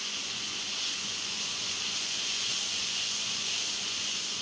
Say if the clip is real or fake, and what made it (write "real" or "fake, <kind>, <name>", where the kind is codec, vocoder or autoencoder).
fake, vocoder, Vocos